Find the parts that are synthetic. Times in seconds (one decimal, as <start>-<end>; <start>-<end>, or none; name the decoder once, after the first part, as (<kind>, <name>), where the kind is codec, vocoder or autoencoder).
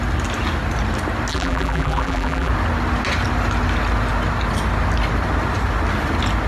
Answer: 1.3-2.5 (vocoder, BigVGAN v2)